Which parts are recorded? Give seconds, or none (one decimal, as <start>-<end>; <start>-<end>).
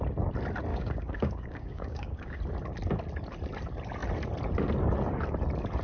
0.0-0.7; 2.4-5.8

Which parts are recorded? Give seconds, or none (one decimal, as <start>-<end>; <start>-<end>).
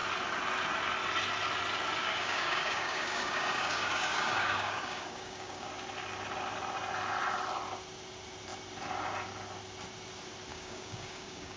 0.0-2.0; 5.7-10.5